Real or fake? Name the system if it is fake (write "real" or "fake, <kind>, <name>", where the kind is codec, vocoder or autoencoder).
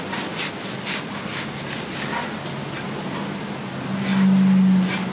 real